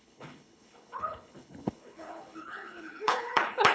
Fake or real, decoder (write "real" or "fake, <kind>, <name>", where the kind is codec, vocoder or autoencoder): fake, codec, HILCodec